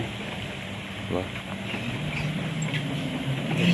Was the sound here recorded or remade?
recorded